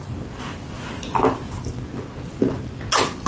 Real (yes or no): yes